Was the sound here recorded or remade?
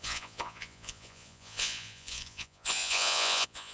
remade